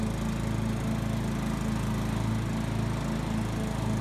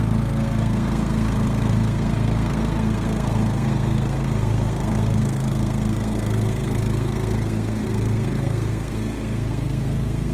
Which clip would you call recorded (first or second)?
first